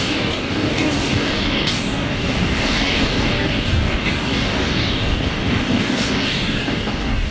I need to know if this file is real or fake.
fake